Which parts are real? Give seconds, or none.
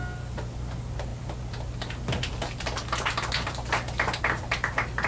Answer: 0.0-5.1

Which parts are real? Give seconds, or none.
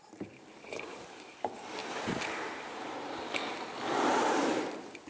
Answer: 1.8-2.8; 3.4-4.0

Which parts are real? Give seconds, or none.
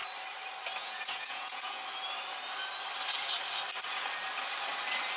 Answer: 0.0-0.8; 1.8-5.2